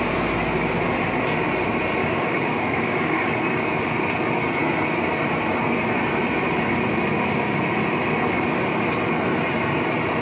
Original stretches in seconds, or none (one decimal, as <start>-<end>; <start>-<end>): 0.0-2.0; 3.3-10.2